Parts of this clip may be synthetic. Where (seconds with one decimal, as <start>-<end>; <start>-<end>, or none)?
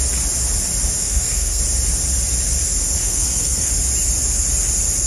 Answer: 1.0-1.6; 3.0-3.7